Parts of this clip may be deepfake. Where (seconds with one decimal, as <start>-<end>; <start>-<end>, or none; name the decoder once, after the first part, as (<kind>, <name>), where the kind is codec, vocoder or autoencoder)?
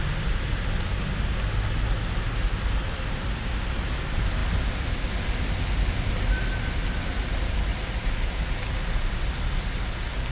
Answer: none